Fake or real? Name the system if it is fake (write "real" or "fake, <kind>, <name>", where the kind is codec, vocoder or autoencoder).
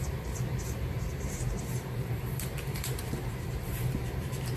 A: fake, vocoder, BigVGAN v2